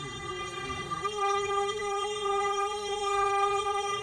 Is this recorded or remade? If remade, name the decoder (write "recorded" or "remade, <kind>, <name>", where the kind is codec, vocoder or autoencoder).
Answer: remade, codec, SNAC